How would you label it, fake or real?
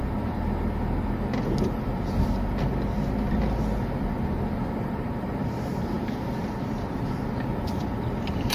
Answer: real